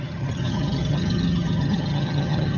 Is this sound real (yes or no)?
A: no